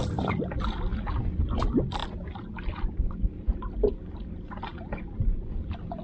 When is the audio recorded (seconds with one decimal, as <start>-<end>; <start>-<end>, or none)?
0.0-6.0